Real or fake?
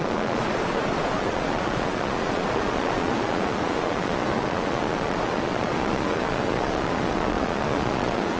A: fake